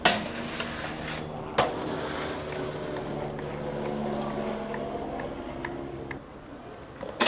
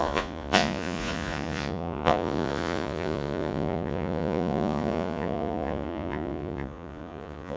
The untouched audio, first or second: first